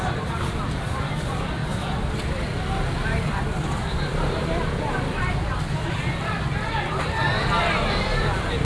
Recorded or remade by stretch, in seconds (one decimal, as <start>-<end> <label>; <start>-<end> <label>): 0.0-8.6 remade